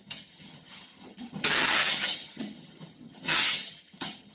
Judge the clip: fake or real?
fake